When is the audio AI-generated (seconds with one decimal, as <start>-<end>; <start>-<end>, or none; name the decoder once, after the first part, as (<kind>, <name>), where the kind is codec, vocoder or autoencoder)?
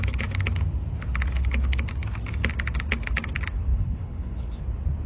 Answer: 3.7-4.6 (codec, HILCodec)